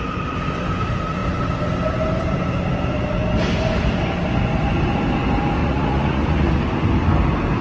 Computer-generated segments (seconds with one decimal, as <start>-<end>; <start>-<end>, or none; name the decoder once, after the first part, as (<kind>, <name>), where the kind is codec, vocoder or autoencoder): 5.6-6.6 (vocoder, Vocos)